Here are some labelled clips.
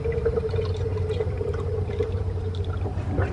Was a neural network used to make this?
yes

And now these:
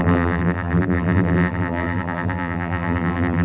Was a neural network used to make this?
yes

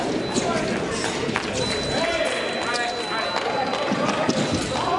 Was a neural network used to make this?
no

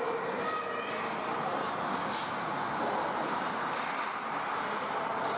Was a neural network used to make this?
no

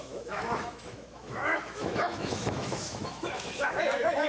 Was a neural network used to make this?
yes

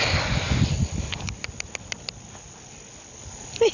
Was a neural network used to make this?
no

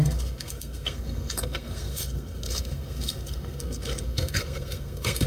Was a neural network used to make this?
yes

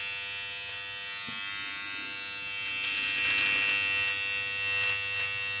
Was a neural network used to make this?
no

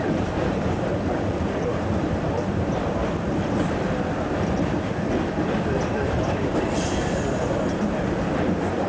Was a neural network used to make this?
yes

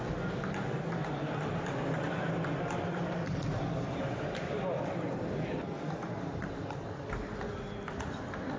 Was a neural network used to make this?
no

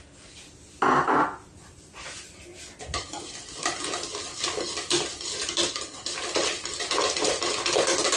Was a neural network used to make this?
no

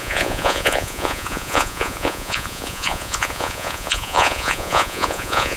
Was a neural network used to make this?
yes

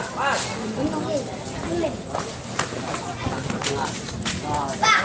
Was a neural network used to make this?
no